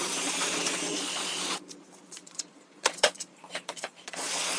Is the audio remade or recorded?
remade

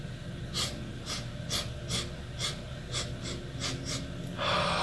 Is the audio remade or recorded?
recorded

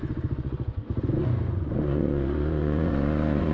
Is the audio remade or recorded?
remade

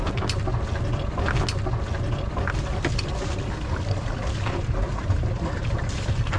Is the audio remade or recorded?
recorded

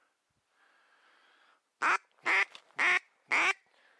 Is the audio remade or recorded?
recorded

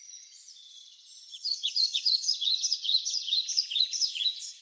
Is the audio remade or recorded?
remade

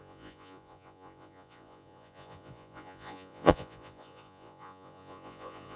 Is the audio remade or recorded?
remade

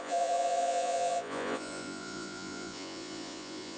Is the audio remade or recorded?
remade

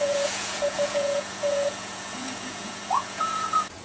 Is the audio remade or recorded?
remade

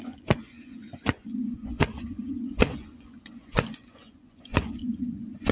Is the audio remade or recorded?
remade